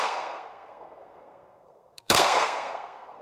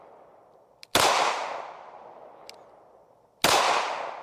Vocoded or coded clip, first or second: first